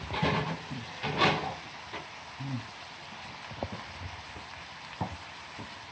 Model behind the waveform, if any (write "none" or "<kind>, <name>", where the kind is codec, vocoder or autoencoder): none